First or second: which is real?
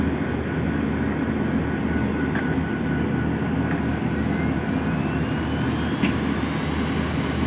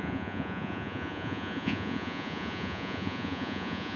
first